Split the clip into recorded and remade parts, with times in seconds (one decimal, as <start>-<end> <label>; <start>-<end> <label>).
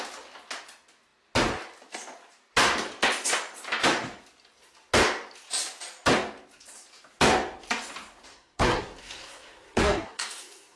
0.0-8.3 recorded; 8.3-10.8 remade